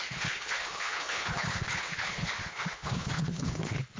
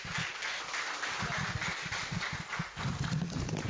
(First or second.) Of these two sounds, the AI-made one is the first